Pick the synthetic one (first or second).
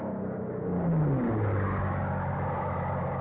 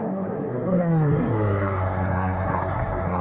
second